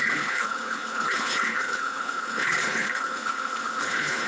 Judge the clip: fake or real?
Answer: fake